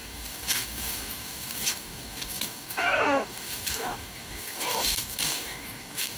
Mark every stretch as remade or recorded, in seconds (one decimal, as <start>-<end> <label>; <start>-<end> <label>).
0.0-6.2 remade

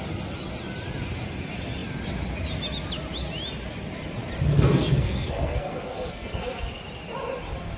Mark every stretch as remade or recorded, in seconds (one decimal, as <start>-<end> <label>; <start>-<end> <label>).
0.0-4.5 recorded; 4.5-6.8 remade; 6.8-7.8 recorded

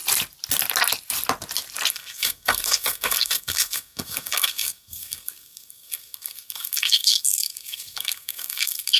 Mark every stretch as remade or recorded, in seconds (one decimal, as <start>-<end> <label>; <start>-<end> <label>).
0.0-1.9 recorded; 1.9-9.0 remade